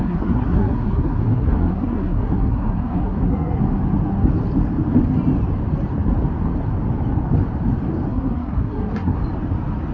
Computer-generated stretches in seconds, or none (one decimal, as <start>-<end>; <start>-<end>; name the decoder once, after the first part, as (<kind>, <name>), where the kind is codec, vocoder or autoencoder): 0.0-3.6 (codec, SNAC); 8.1-9.2